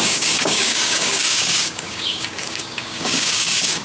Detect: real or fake fake